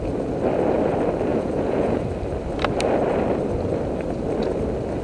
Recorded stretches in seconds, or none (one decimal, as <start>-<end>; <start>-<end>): 0.0-1.3; 2.0-5.0

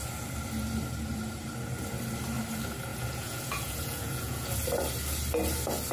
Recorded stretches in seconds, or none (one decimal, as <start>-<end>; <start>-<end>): 0.0-2.9; 4.5-5.9

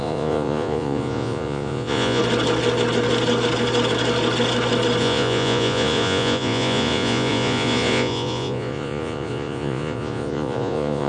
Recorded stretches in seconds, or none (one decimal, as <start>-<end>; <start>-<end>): 2.2-5.0

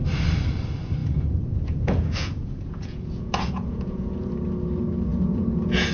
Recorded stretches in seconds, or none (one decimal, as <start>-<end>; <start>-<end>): 0.0-1.0; 4.3-5.1

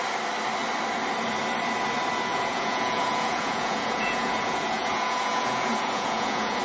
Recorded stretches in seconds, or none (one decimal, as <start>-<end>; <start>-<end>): 0.0-2.3

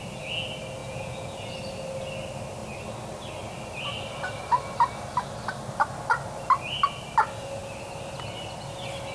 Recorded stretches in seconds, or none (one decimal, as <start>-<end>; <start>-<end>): 0.0-0.8; 1.5-9.1

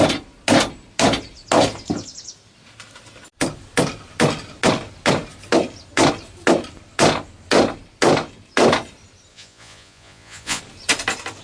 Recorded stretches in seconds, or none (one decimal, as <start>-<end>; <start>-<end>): 0.0-9.3; 10.6-11.4